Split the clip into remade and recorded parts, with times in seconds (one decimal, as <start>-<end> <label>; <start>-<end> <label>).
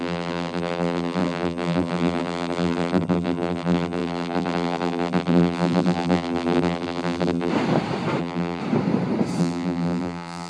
0.0-7.5 remade; 7.5-8.2 recorded; 8.2-8.6 remade; 8.6-9.4 recorded; 9.4-10.5 remade